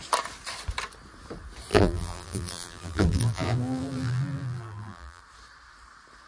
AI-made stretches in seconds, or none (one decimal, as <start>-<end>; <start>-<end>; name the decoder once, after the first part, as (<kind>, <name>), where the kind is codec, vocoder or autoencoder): 1.7-5.2 (vocoder, BigVGAN v2)